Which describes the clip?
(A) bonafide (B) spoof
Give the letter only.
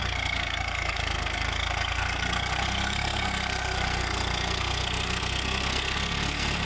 B